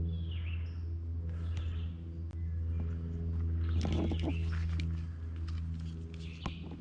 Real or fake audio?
real